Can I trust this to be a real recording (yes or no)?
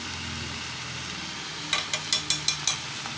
yes